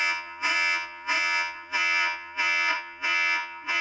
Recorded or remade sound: remade